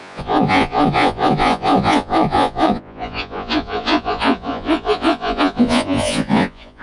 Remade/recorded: remade